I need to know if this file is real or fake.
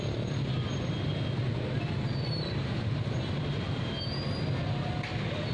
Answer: real